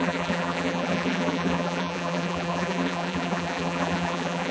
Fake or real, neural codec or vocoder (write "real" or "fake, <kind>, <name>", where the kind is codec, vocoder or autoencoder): fake, vocoder, BigVGAN v2